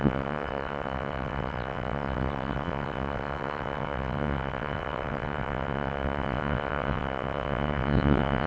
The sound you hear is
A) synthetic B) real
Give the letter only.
A